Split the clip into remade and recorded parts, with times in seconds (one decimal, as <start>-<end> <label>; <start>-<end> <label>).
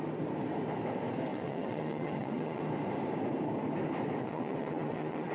0.0-1.3 recorded; 1.3-2.6 remade; 2.6-4.2 recorded; 4.2-5.3 remade